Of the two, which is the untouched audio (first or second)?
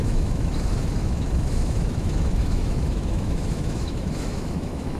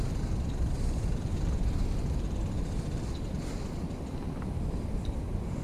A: second